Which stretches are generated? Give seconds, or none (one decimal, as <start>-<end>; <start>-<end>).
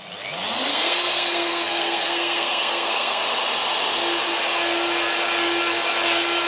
0.7-3.2